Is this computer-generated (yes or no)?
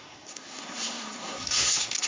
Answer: yes